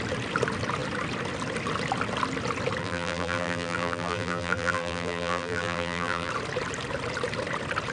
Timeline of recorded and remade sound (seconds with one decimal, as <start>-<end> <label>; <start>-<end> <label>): 0.0-2.8 recorded; 2.8-6.3 remade; 6.3-7.9 recorded